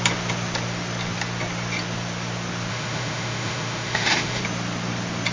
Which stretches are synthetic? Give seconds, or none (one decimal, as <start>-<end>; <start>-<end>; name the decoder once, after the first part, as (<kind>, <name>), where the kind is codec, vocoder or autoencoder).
2.7-4.4 (autoencoder, DAC-VAE)